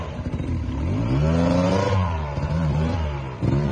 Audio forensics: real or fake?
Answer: fake